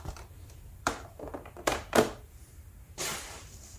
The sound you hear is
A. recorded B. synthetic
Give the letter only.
B